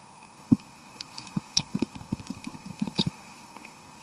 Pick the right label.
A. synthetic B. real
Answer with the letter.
A